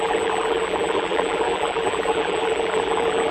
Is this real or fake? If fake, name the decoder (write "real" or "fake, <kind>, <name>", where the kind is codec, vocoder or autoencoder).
fake, vocoder, BigVGAN v2